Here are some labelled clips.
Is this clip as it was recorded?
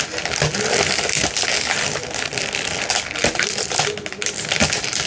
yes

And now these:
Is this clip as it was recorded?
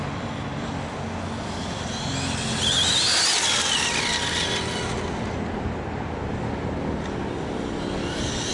yes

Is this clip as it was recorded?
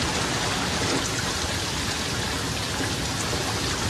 yes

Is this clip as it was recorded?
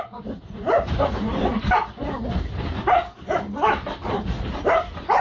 no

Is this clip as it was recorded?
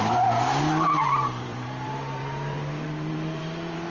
no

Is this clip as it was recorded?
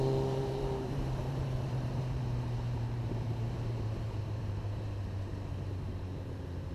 no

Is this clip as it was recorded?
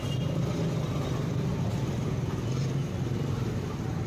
yes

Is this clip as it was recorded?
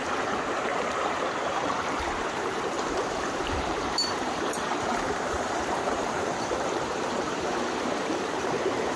no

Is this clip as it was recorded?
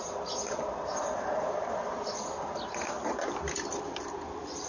yes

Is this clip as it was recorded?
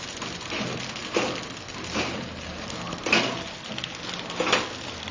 yes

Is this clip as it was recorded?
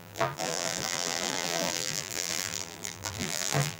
no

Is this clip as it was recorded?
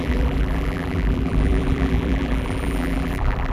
no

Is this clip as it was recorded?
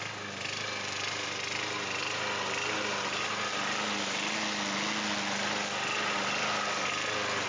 yes